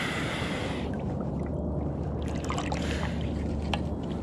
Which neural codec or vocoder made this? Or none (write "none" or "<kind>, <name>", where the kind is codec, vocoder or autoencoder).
none